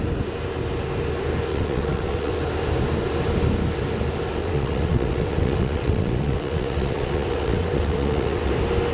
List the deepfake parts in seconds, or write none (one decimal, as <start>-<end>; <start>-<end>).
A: 1.5-2.4; 4.4-8.5